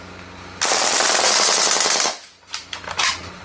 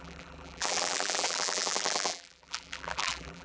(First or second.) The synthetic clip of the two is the second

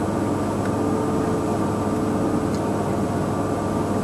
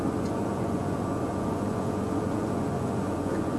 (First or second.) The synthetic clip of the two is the second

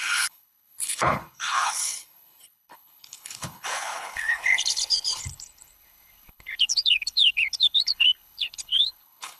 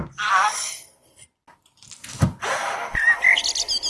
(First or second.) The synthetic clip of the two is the first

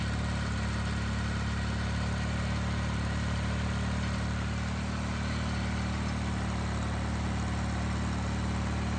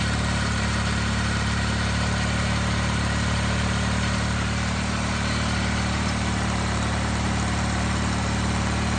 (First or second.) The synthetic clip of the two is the second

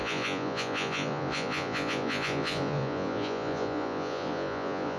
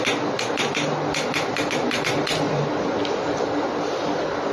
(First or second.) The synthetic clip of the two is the first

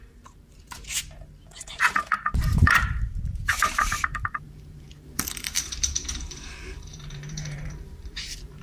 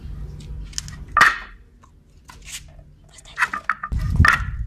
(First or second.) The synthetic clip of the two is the first